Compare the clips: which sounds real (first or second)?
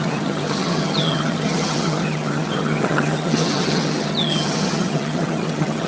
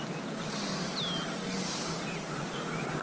second